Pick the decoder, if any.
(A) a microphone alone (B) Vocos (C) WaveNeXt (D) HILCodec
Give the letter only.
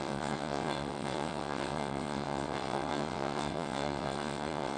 C